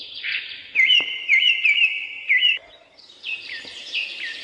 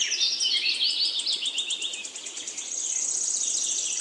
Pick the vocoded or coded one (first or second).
first